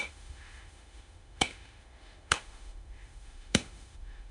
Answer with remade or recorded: remade